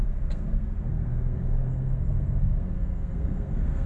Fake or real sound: fake